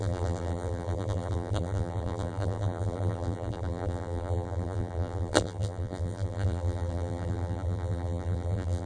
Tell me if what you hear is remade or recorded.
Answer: remade